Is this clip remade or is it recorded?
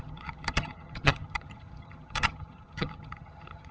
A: remade